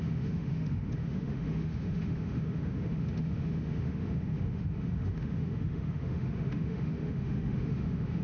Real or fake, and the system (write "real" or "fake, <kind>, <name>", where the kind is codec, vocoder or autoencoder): fake, autoencoder, DAC-VAE